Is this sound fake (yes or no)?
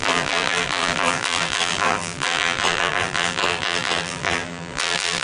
yes